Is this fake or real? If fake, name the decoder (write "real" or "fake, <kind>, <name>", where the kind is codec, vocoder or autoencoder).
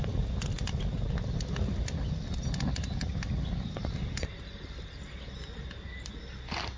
real